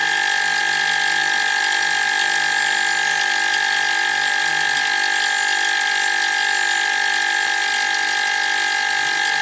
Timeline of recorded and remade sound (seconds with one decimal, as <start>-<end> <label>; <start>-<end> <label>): 0.0-1.2 recorded; 1.2-4.5 remade; 4.5-9.4 recorded